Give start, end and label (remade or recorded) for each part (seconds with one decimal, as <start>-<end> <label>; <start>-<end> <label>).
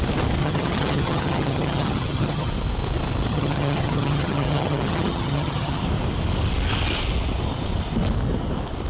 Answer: 0.0-0.4 recorded; 0.4-2.5 remade; 2.5-3.3 recorded; 3.3-5.8 remade; 5.8-8.9 recorded